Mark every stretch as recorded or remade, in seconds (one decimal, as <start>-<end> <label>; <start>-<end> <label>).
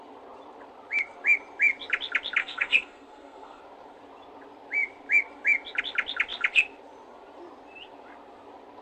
0.0-2.4 recorded; 2.4-3.6 remade; 3.6-8.8 recorded